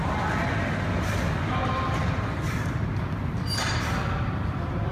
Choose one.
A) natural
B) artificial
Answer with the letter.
A